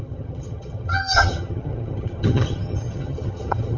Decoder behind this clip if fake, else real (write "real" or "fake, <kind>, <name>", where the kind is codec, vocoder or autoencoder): fake, vocoder, HiFi-GAN